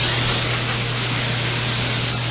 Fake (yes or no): no